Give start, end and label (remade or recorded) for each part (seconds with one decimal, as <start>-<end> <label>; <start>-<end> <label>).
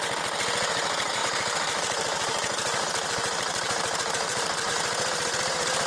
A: 0.0-1.2 recorded; 1.2-4.7 remade; 4.7-5.9 recorded